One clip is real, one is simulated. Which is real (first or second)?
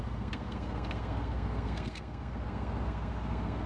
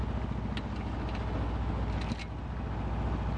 second